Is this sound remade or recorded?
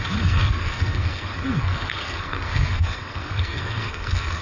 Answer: remade